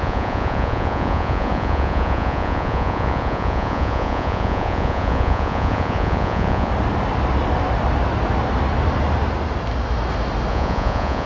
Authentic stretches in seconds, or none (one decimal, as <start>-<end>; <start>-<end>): 6.7-10.5